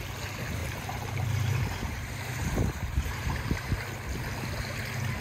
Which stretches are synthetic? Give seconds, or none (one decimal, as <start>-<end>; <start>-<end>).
0.6-3.7